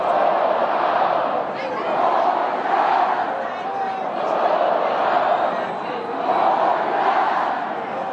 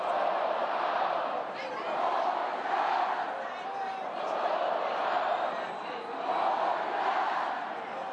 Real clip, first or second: first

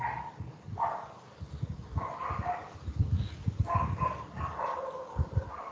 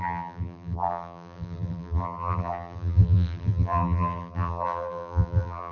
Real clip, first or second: first